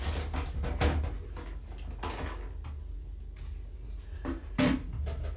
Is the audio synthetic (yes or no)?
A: no